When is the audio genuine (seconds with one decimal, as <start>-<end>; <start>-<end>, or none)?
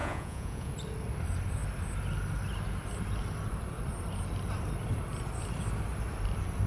0.7-6.7